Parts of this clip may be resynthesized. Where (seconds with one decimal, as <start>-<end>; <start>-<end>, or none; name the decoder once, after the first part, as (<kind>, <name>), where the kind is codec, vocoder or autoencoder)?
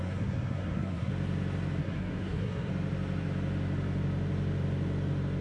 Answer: 0.0-1.1 (codec, SNAC); 1.8-2.7